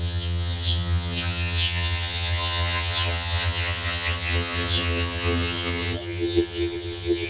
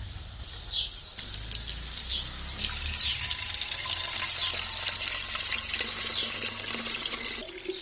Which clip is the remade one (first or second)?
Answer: first